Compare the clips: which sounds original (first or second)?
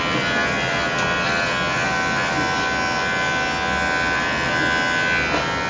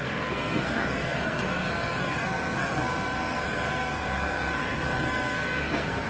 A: first